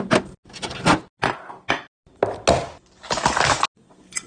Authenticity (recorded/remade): recorded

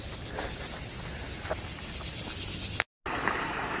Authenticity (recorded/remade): recorded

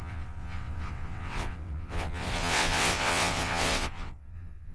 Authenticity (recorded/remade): remade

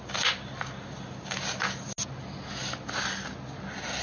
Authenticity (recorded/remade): recorded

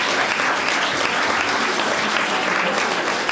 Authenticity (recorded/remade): recorded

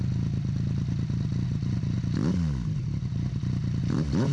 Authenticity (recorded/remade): recorded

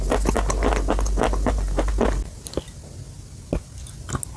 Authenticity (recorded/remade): recorded